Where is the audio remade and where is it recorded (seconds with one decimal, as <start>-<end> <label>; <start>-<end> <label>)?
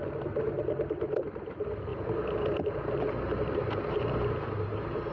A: 0.0-1.9 recorded; 1.9-5.1 remade